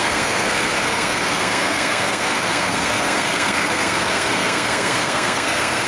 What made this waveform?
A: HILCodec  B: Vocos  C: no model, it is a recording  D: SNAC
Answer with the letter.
D